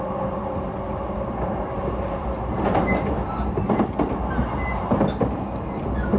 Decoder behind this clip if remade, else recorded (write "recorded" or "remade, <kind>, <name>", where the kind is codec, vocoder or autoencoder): recorded